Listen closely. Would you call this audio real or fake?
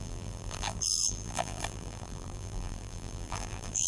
fake